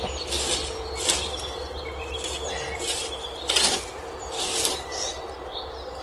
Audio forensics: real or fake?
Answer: real